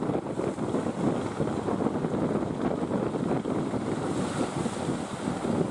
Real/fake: real